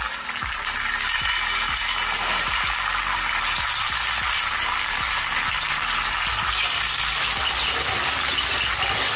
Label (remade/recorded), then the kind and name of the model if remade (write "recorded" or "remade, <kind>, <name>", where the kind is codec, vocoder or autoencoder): recorded